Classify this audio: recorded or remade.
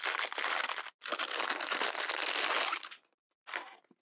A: recorded